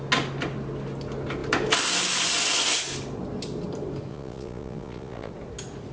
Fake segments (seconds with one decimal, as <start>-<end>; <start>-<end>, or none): 4.1-5.3